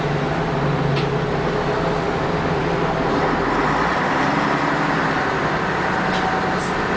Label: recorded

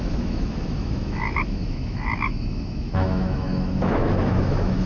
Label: remade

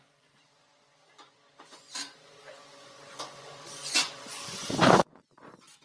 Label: remade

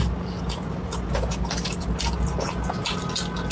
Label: recorded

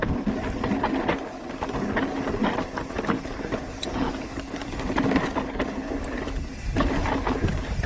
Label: recorded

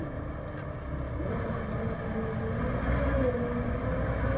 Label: recorded